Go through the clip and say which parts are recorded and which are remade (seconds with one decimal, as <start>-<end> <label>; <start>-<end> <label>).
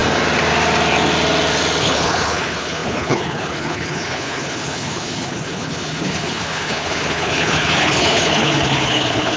0.0-1.8 recorded; 1.8-9.4 remade